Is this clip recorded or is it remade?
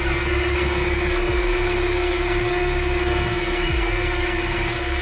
remade